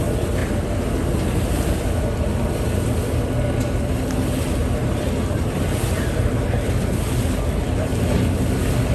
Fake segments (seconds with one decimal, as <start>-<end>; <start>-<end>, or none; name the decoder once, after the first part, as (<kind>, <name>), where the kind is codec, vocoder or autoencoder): 4.6-6.3 (vocoder, BigVGAN v2)